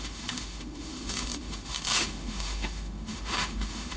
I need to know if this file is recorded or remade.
remade